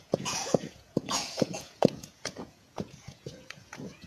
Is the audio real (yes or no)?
no